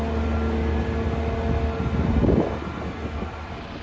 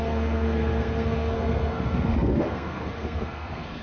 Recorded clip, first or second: first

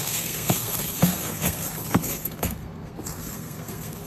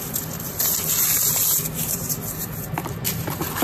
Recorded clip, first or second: second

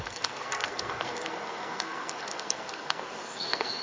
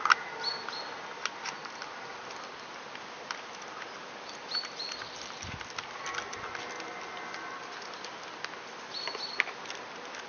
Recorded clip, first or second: second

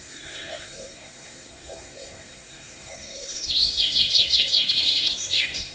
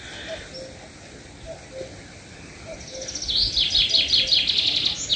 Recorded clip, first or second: second